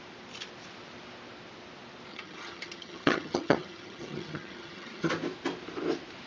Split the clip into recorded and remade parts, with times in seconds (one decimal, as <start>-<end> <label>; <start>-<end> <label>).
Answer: 0.0-2.1 recorded; 2.1-5.1 remade; 5.1-6.3 recorded